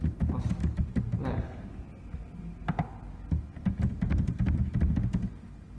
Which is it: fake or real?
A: real